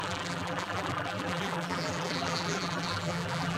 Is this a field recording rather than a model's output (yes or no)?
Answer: no